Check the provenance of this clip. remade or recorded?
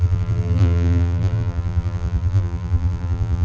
remade